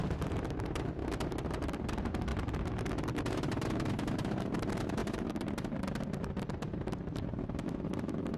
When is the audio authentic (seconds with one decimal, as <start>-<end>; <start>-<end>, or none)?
1.0-1.5